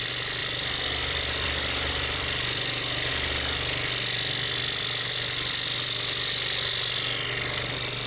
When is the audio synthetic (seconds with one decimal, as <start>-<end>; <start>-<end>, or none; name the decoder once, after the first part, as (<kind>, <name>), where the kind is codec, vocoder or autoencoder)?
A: 0.4-3.1 (vocoder, BigVGAN v2)